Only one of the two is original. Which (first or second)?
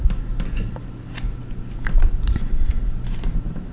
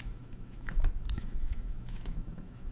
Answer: first